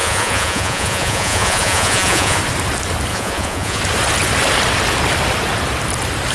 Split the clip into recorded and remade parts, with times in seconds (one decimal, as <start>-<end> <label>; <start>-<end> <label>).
0.0-2.4 remade; 2.4-3.1 recorded; 3.1-3.8 remade; 3.8-6.3 recorded